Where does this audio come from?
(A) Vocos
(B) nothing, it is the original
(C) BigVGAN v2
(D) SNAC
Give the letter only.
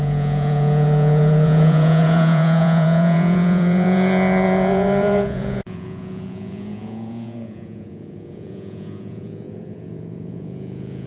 A